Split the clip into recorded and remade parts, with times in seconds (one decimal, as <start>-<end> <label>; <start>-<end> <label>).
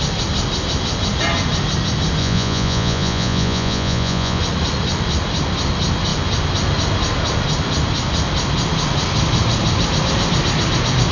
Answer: 0.0-2.2 recorded; 2.2-4.4 remade; 4.4-11.1 recorded